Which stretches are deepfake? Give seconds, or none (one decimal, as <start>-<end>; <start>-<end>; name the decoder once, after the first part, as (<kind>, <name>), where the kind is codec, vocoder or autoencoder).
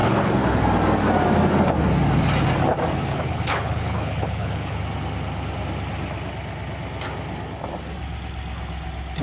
0.0-0.6 (codec, HILCodec); 3.1-4.8